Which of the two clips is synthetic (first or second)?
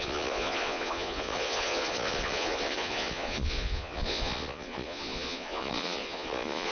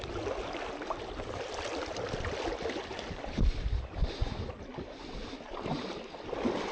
first